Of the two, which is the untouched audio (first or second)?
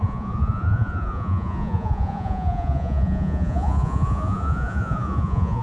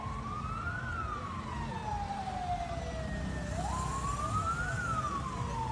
second